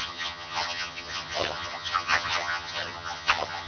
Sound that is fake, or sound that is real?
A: fake